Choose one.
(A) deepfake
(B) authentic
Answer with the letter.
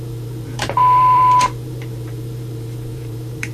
A